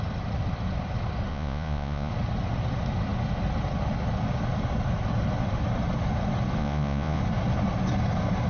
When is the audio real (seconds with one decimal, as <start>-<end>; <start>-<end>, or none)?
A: 0.0-1.3; 2.1-6.6; 7.2-8.5